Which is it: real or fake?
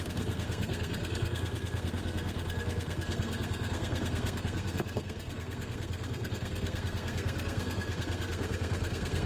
fake